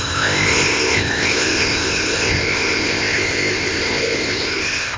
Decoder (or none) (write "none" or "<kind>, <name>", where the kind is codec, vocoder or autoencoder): codec, ZipCodec